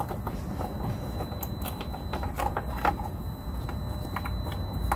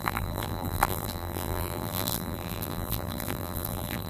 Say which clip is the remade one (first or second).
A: second